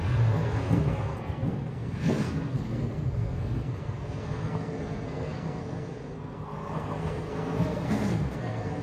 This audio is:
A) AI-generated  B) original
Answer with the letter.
A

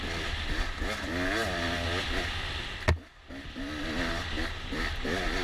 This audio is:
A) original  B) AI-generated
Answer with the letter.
A